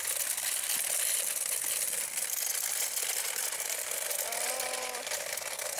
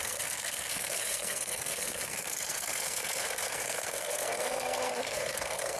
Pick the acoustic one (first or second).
first